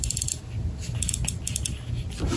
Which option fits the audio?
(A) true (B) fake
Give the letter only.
A